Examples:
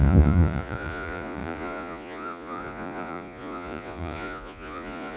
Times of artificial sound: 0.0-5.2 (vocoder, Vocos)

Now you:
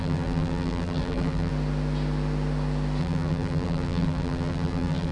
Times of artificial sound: 0.0-1.5 (vocoder, BigVGAN v2); 3.0-5.1

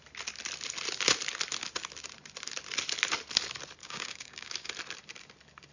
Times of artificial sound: 3.8-4.7 (codec, DAC)

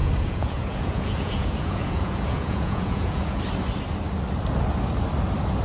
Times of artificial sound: 0.0-3.4 (vocoder, Vocos)

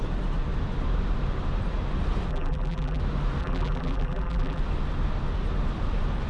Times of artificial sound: 2.3-3.0 (vocoder, BigVGAN v2); 3.4-4.6